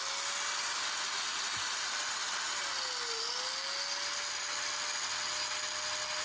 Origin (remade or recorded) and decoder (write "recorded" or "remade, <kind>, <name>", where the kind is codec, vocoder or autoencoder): recorded